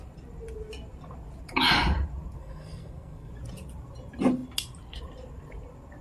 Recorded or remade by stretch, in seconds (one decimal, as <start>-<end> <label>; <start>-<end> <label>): 0.0-2.4 recorded; 2.4-3.3 remade; 3.3-6.0 recorded